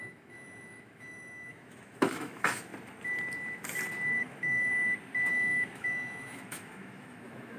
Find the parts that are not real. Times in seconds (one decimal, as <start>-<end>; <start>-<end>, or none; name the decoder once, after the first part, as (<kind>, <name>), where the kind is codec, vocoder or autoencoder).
0.0-2.7 (autoencoder, DAC-VAE); 4.2-4.7; 5.3-7.6